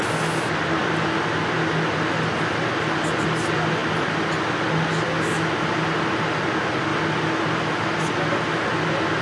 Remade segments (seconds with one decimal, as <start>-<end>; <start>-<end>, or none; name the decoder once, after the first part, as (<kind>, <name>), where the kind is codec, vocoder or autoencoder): none